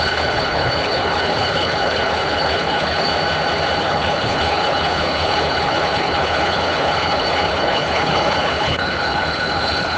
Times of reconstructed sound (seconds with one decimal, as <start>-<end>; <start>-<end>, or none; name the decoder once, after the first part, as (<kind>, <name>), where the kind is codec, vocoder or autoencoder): 0.0-3.1 (codec, HILCodec); 3.8-10.0